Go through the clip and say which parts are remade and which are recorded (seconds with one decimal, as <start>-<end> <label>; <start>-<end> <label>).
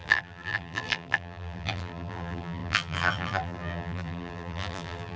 0.0-5.2 remade